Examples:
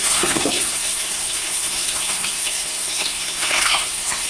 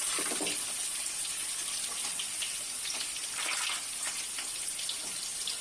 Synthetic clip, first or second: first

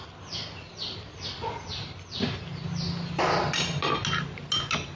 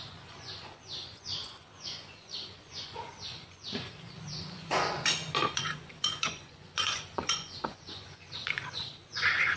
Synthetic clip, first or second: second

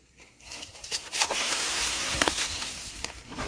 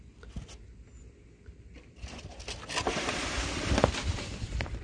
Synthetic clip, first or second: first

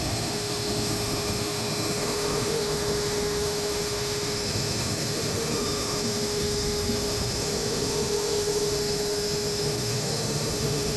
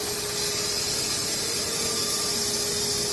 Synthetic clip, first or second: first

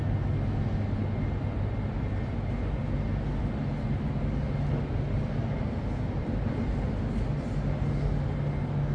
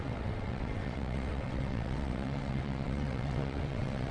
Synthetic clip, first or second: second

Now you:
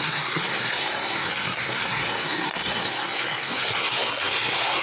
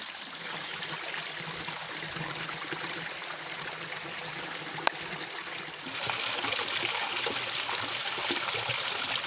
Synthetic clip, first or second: first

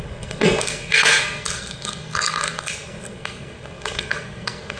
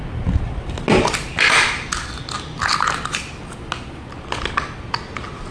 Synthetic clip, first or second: first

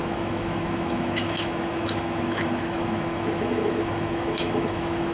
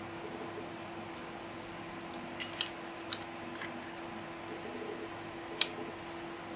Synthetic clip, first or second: first